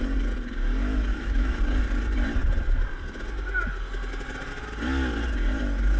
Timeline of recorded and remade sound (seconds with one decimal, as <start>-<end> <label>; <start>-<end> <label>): 0.0-1.1 recorded; 1.1-1.6 remade; 1.6-6.0 recorded

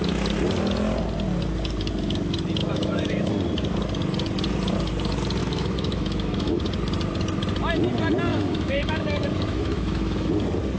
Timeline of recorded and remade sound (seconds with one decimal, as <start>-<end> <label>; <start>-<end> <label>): 0.0-2.6 recorded; 2.6-3.3 remade; 3.3-5.4 recorded; 5.4-6.6 remade; 6.6-8.3 recorded; 8.3-10.3 remade; 10.3-10.8 recorded